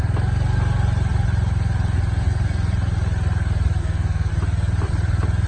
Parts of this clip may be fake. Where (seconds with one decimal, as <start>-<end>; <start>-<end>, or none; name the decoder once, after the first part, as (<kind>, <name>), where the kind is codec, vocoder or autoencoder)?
3.8-4.3 (codec, SNAC)